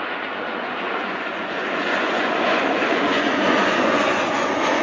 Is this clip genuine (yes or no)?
no